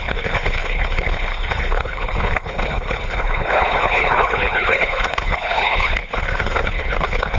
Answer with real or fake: fake